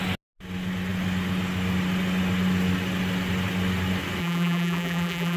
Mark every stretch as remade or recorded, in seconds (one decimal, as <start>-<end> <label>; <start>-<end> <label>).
0.0-4.2 recorded; 4.2-5.4 remade